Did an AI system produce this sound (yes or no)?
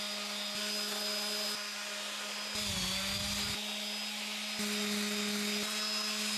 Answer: no